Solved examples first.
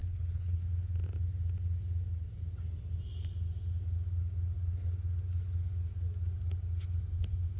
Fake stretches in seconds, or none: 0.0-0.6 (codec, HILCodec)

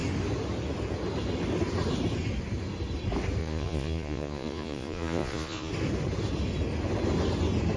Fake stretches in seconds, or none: 3.4-5.7 (vocoder, Vocos)

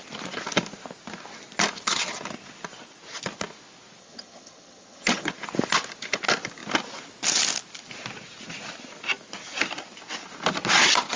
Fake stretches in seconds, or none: 4.0-5.3 (vocoder, HiFi-GAN)

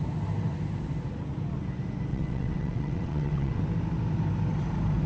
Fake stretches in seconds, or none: 2.1-3.6 (vocoder, WaveNeXt)